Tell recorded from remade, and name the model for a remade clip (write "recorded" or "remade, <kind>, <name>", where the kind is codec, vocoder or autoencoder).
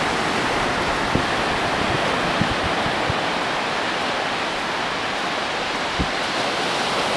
recorded